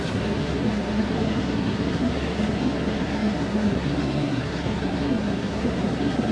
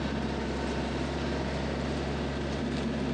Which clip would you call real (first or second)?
second